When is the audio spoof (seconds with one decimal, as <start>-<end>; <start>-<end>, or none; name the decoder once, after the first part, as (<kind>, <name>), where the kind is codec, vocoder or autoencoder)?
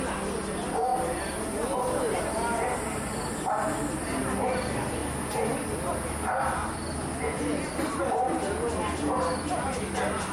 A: none